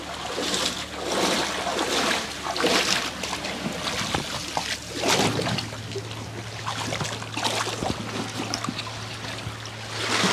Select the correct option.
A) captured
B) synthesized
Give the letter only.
A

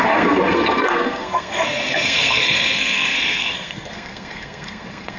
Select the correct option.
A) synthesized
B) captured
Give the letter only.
A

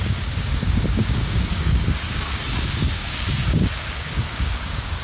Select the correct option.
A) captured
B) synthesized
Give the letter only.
B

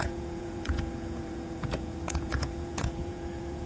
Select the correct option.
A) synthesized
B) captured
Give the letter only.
A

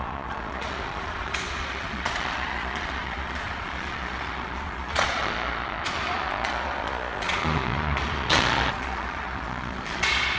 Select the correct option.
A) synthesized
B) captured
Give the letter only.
A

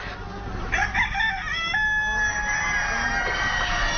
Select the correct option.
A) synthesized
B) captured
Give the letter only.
B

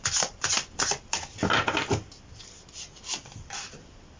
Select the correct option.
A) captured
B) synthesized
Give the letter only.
A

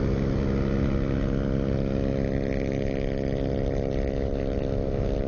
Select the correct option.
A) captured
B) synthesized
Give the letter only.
A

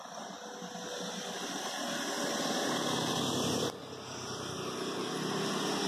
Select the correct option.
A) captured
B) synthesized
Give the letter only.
A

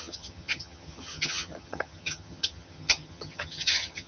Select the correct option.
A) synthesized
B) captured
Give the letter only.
A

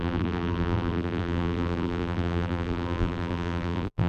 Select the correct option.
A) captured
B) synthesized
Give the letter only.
B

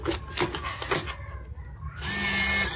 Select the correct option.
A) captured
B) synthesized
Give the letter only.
A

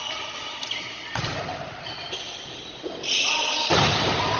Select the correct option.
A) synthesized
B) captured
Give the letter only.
B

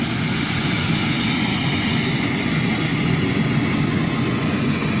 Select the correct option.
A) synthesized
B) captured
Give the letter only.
A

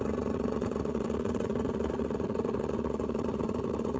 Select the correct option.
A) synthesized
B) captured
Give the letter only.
A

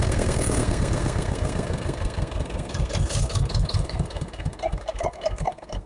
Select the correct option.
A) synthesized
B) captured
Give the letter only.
A